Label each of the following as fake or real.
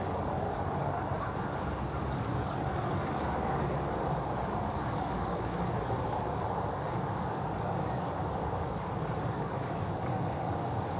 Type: fake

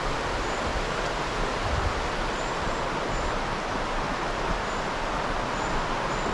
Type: real